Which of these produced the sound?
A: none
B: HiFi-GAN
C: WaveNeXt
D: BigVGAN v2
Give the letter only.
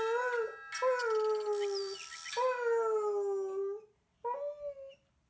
A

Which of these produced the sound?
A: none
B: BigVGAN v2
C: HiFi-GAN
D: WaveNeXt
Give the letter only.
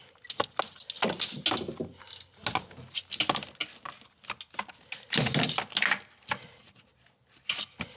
A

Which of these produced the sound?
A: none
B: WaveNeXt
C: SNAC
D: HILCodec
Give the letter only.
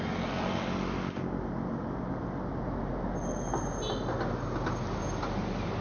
A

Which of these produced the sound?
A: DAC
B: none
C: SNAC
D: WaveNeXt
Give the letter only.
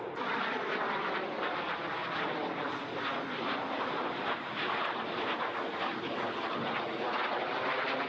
B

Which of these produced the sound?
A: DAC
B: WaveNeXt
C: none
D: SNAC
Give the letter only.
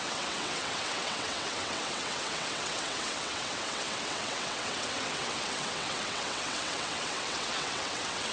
B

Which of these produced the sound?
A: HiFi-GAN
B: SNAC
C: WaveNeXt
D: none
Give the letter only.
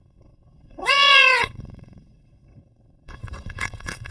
C